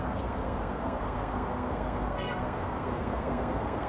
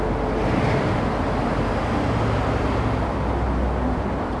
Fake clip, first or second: first